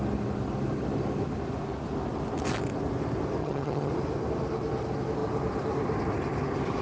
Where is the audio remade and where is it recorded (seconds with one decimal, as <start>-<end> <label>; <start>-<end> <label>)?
0.0-3.4 recorded; 3.4-3.9 remade; 3.9-6.8 recorded